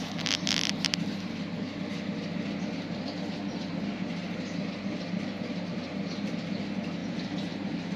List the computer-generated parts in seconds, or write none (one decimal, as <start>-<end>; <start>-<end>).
4.2-6.6; 7.0-8.0